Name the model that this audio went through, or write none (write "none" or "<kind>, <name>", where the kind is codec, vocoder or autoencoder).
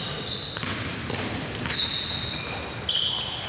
none